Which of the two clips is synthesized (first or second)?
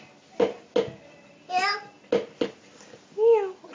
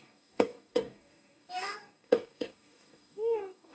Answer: second